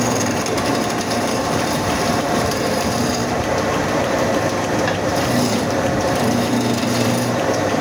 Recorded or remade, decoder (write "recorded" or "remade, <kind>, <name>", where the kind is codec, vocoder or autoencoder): remade, vocoder, BigVGAN v2